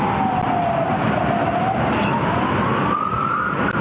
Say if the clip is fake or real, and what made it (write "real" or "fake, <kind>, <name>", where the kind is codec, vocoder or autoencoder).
real